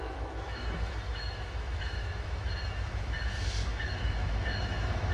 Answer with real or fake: fake